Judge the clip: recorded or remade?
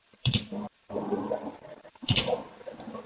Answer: remade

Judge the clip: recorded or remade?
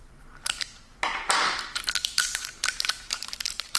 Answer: remade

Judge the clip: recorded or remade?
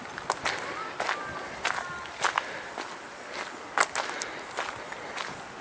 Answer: recorded